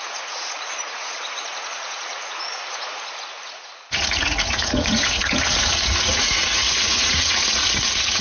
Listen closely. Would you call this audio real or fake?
fake